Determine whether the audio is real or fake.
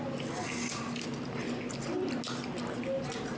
real